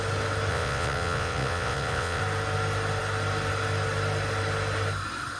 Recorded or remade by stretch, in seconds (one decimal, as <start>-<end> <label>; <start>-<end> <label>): 0.0-0.5 recorded; 0.5-2.2 remade; 2.2-5.4 recorded